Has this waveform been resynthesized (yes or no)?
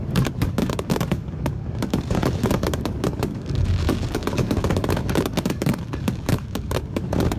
yes